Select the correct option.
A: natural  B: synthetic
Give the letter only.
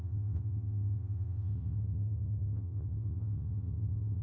B